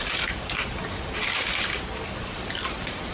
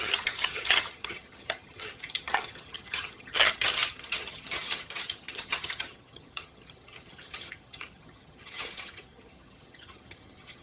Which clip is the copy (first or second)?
second